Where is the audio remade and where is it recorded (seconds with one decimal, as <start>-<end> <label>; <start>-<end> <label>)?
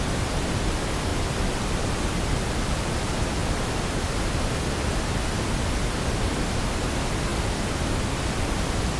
0.0-1.1 recorded; 1.1-2.8 remade; 2.8-3.4 recorded; 3.4-5.4 remade; 5.4-9.0 recorded